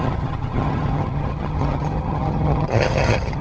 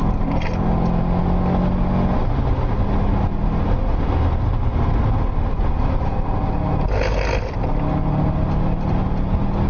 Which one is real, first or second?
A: second